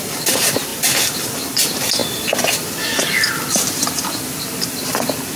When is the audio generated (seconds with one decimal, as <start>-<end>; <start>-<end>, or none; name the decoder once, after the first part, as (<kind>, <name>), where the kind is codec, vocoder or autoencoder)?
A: none